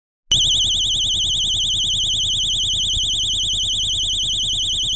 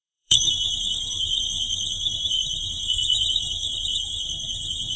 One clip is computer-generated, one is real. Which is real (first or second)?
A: first